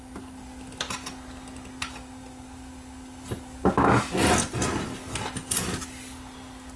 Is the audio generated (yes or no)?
no